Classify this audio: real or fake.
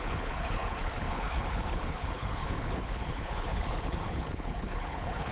fake